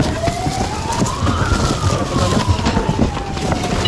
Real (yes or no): yes